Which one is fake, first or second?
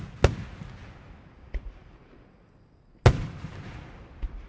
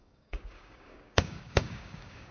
second